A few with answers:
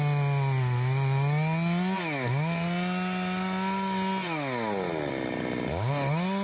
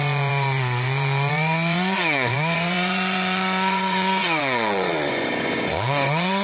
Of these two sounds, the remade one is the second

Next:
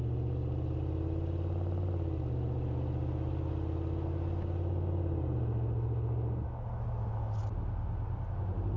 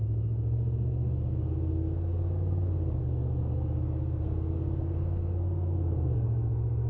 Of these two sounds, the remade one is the second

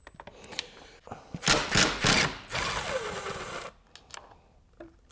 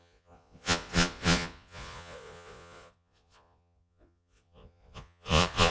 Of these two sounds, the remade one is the second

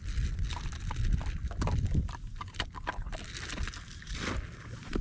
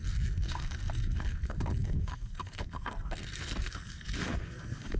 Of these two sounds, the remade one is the second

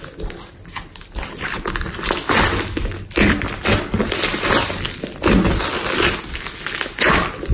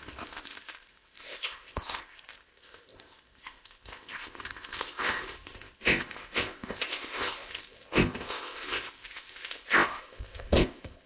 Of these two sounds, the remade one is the second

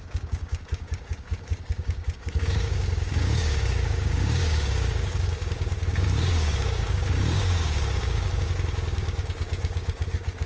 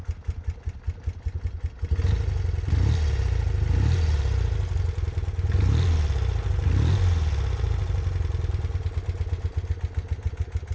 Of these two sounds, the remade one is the first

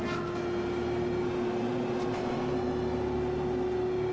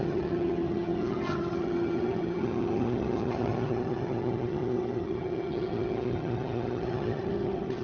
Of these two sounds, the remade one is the second